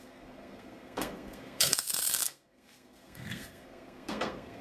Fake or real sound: fake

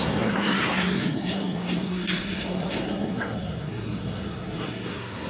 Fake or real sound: fake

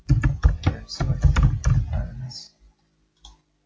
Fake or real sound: real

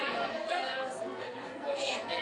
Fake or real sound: fake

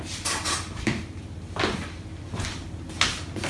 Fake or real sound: real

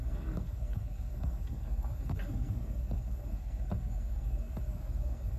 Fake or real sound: fake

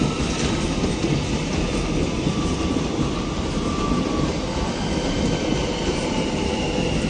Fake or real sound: real